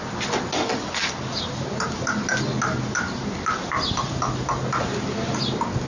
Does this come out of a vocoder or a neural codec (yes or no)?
no